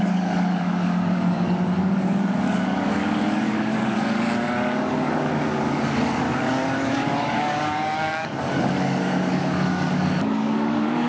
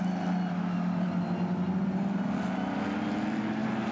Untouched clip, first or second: second